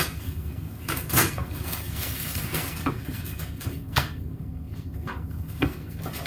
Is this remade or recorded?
remade